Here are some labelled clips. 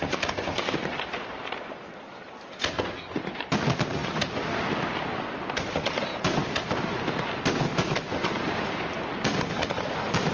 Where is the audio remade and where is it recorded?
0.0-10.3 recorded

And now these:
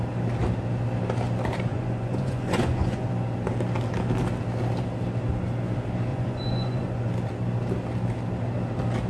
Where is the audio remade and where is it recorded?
0.0-1.7 recorded; 1.7-3.1 remade; 3.1-6.1 recorded; 6.1-7.1 remade; 7.1-9.1 recorded

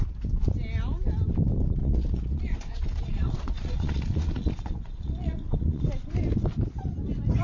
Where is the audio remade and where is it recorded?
0.0-1.8 recorded; 1.8-5.8 remade; 5.8-7.4 recorded

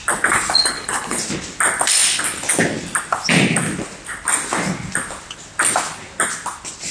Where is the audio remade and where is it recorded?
0.0-0.6 recorded; 0.6-1.2 remade; 1.2-6.9 recorded

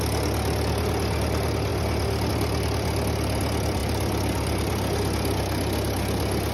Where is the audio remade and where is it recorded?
0.0-6.5 recorded

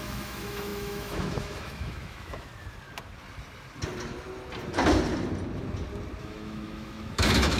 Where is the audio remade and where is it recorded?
0.0-2.5 remade; 2.5-6.2 recorded; 6.2-7.6 remade

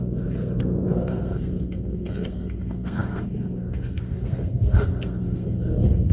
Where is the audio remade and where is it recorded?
0.0-6.1 remade

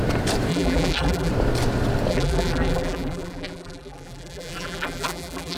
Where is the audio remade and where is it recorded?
0.0-0.5 recorded; 0.5-1.3 remade; 1.3-2.1 recorded; 2.1-5.6 remade